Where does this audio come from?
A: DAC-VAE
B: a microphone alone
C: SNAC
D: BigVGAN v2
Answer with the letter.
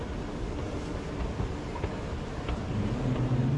B